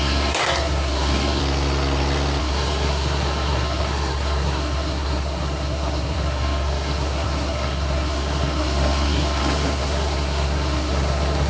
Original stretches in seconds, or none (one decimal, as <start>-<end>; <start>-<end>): 1.4-2.4